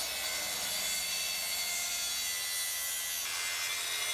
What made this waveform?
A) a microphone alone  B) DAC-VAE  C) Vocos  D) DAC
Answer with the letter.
A